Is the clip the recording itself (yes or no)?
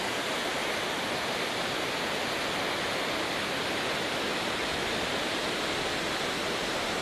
yes